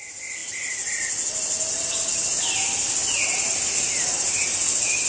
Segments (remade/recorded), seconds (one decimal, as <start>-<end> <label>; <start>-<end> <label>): 0.0-5.1 recorded